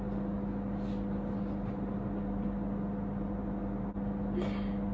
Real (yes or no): yes